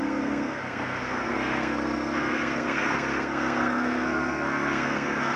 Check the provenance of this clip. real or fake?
fake